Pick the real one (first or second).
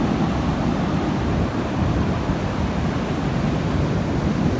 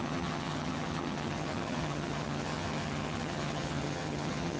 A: first